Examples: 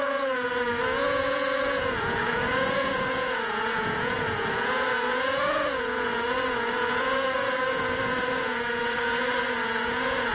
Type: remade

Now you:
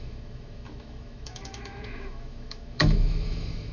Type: remade